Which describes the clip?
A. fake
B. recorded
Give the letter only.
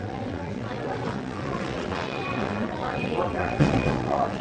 A